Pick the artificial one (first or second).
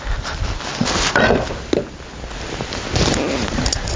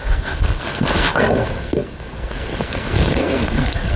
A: second